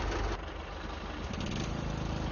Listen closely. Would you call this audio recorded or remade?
recorded